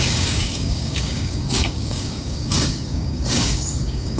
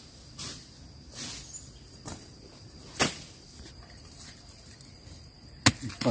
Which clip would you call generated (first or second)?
first